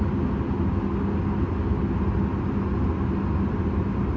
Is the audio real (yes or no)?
yes